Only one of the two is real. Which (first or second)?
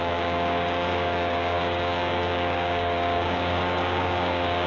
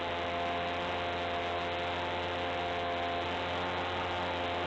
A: second